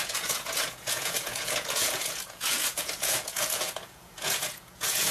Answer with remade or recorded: remade